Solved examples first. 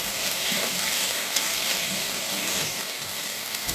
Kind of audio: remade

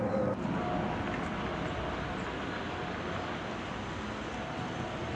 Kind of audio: recorded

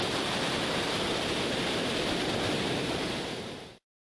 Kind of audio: remade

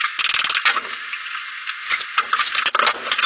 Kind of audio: recorded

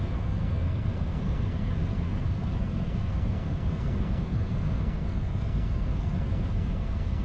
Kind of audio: remade